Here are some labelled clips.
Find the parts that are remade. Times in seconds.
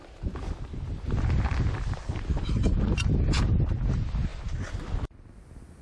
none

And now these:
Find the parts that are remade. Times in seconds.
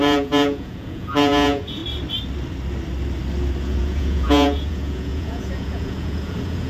0.0-1.8; 3.6-6.7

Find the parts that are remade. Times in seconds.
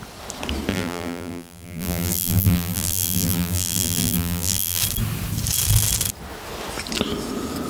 0.7-4.8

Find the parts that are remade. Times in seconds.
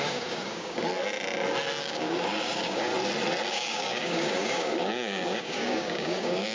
0.0-0.9; 1.8-2.9; 3.5-6.5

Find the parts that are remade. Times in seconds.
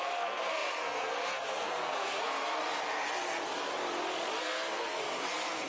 0.0-2.6; 4.4-5.7